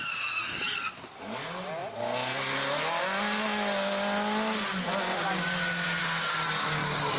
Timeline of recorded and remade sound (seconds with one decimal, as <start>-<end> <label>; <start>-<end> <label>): 0.0-7.2 recorded